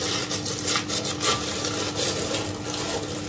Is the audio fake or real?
real